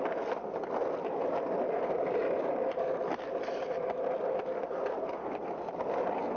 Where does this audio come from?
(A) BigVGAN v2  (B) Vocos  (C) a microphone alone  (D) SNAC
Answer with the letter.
C